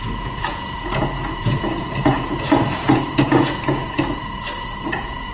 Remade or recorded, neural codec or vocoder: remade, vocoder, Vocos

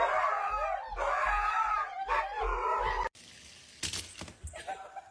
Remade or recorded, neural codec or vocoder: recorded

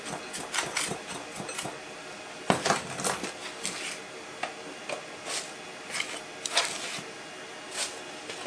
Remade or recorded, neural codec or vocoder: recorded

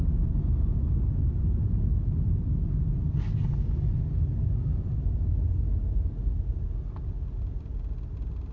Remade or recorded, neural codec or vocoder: recorded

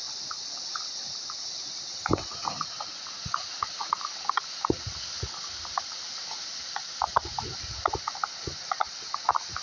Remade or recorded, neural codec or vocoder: recorded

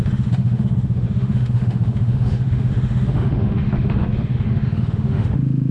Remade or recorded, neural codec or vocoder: remade, autoencoder, DAC-VAE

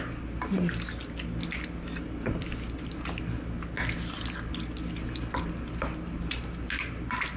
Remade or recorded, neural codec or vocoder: recorded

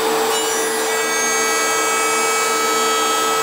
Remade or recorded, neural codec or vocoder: recorded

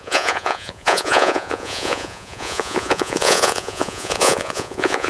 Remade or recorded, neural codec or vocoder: remade, vocoder, Vocos